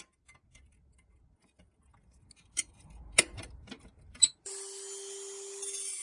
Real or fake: real